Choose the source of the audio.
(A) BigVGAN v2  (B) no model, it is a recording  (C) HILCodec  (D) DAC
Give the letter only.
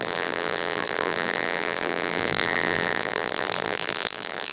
A